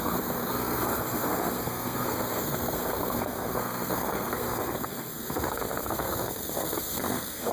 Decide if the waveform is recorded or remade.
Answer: remade